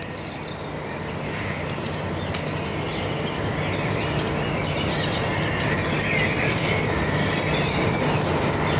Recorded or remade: recorded